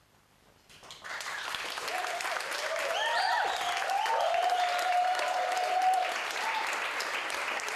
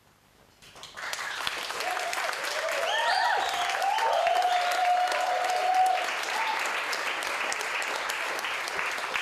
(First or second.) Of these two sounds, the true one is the second